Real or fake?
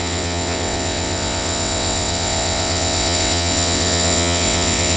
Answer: fake